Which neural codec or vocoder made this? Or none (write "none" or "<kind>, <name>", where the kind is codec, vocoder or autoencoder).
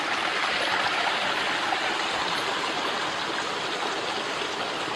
none